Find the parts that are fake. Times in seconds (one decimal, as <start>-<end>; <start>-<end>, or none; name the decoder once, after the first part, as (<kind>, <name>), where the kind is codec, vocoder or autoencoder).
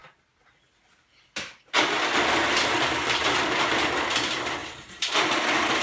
4.6-5.8 (vocoder, BigVGAN v2)